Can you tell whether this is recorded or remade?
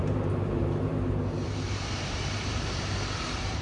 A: remade